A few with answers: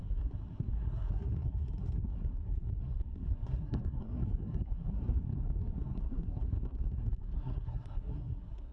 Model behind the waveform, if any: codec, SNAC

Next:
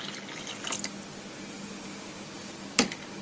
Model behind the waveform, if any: none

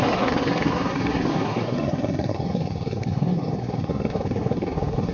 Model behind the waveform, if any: codec, SNAC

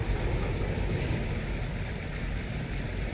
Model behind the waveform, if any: none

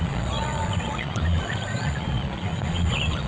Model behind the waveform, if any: vocoder, Vocos